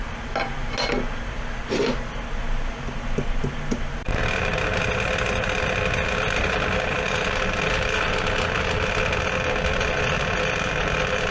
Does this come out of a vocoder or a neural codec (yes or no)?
no